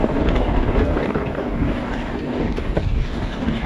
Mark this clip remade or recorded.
remade